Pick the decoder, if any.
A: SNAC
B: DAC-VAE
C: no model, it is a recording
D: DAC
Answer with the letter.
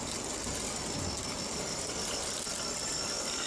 C